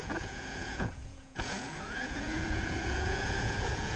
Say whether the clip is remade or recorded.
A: remade